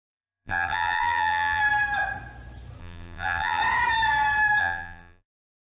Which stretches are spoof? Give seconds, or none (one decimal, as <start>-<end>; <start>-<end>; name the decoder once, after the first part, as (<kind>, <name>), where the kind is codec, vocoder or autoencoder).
0.0-1.6 (vocoder, BigVGAN v2); 2.8-3.6; 4.6-5.8